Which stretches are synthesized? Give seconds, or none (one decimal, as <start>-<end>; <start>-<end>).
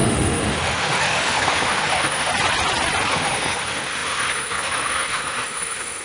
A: 0.0-2.3; 3.1-6.0